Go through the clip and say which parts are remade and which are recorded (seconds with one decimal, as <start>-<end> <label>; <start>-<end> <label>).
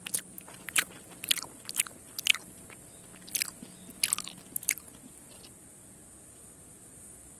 0.0-1.4 remade; 1.4-7.4 recorded